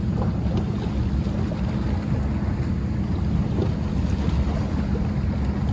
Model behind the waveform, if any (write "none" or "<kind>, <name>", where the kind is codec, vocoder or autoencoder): none